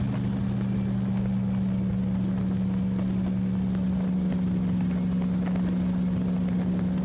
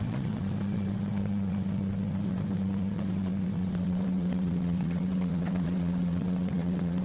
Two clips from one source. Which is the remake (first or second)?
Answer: second